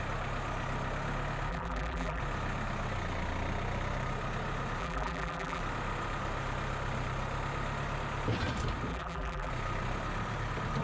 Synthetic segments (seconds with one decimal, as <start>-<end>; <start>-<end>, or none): 1.5-2.2; 4.8-5.6; 8.9-9.5